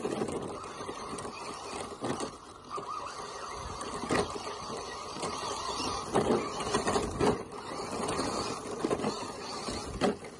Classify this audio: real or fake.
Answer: real